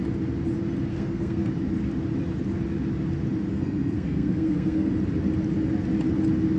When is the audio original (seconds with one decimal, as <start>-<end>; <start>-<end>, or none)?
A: 0.0-0.9; 1.5-3.5; 4.9-6.6

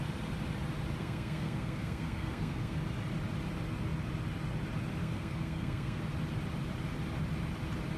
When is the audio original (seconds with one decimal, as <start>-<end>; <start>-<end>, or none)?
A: 0.0-1.0; 2.8-5.0; 6.0-8.0

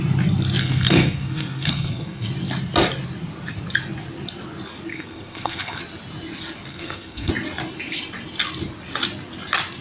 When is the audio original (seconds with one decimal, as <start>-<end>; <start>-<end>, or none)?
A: 0.0-0.6; 2.3-4.9; 5.8-6.7; 7.3-9.8